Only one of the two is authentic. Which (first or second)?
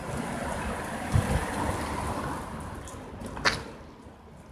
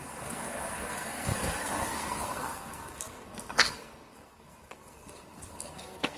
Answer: first